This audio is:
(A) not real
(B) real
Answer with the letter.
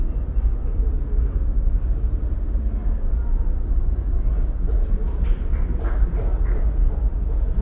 B